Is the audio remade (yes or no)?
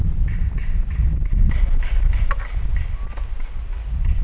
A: no